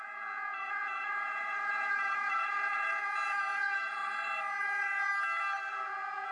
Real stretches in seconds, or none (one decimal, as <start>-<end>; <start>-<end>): 4.0-4.6; 5.1-5.7